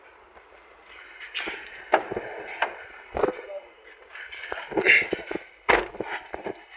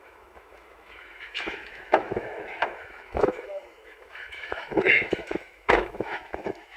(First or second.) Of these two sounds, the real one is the first